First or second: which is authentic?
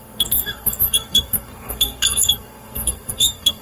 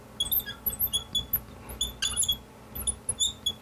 second